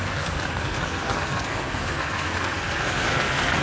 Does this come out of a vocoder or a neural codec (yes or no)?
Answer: yes